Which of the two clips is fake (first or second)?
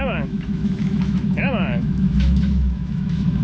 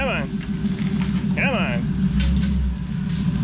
first